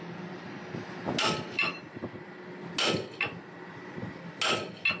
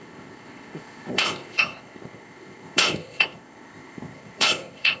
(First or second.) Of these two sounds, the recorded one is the first